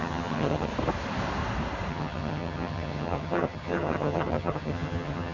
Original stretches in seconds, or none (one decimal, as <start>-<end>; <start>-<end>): 0.7-1.9